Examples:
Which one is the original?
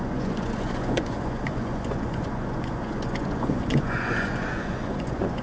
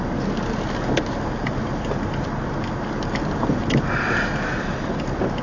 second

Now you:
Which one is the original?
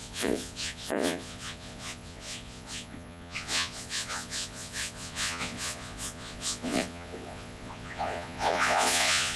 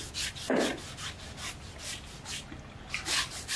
second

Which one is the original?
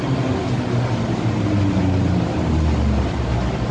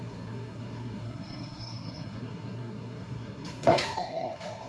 first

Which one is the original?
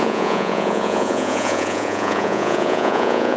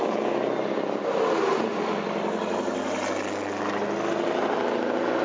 second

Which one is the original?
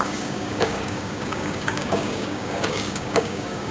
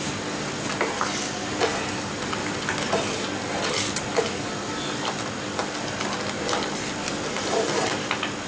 second